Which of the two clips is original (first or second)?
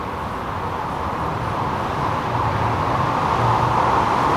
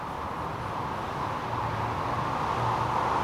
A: second